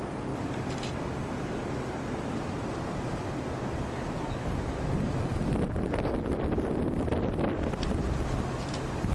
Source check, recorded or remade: recorded